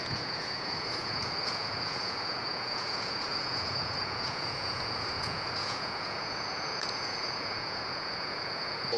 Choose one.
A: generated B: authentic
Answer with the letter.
A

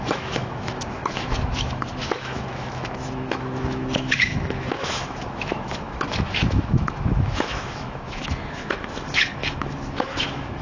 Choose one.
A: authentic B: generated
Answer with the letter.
B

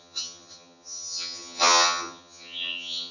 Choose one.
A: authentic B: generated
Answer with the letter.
B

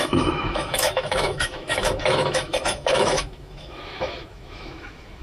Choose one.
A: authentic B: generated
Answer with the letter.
B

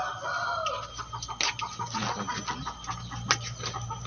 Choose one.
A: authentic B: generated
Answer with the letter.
A